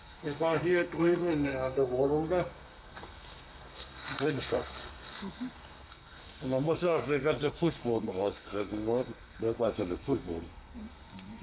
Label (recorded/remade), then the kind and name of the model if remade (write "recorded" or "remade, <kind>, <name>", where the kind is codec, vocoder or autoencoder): remade, codec, SNAC